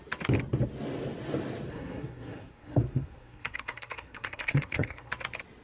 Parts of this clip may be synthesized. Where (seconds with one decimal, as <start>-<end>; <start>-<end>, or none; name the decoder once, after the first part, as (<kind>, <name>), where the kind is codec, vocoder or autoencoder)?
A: 1.7-5.1 (codec, SNAC)